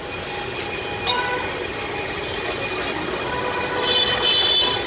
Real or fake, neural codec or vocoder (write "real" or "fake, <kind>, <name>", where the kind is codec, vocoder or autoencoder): real